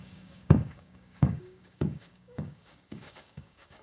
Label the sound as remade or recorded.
remade